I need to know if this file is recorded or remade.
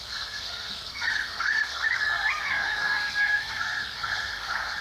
remade